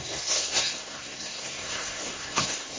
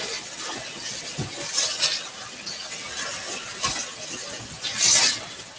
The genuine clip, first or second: second